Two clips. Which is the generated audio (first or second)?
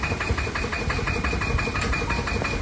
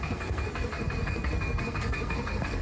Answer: second